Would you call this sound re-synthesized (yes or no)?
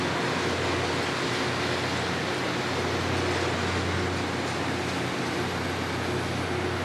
no